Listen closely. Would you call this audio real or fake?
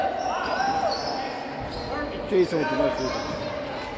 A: real